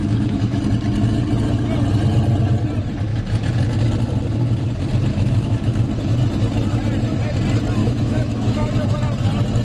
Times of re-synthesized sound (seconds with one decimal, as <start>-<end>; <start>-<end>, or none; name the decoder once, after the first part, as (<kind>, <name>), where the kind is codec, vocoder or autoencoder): 0.0-0.6 (autoencoder, DAC-VAE); 5.1-5.8; 7.8-8.7